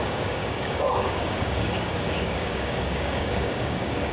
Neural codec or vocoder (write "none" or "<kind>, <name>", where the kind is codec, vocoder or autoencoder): codec, DAC